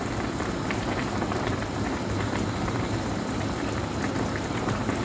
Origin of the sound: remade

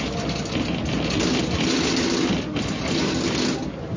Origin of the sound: recorded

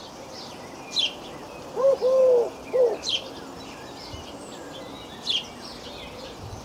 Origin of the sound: recorded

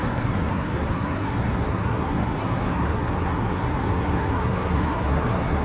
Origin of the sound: remade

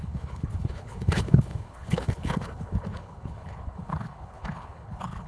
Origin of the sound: remade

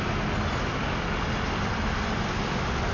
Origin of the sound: recorded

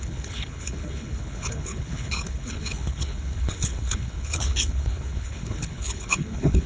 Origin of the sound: remade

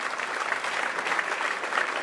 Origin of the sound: recorded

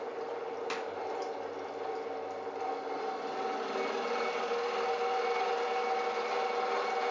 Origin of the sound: recorded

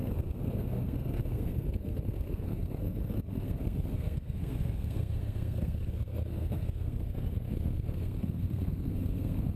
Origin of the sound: remade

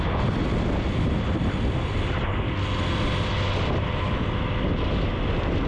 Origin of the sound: recorded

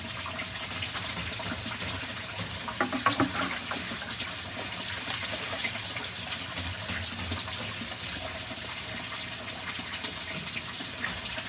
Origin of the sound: recorded